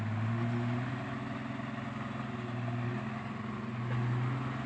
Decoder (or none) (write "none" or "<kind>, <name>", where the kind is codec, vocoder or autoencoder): none